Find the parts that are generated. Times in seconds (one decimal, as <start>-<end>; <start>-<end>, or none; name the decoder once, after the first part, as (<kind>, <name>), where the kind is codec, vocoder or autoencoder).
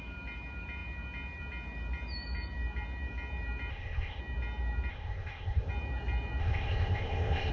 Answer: 3.7-4.2 (codec, ZipCodec); 4.9-5.7; 6.4-7.5